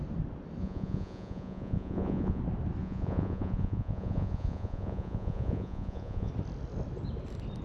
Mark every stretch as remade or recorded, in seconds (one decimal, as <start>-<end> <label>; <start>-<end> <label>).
0.0-0.6 recorded; 0.6-2.4 remade; 2.4-2.8 recorded; 2.8-6.3 remade; 6.3-7.6 recorded